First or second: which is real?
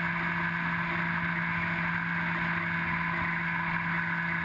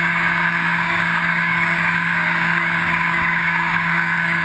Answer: first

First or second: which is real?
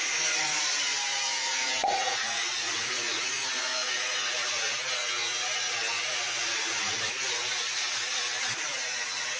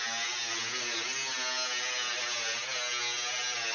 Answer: second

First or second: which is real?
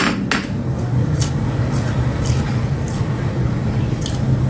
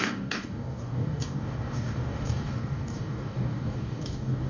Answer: first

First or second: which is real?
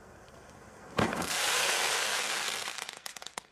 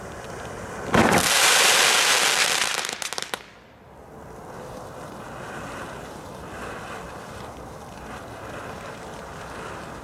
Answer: second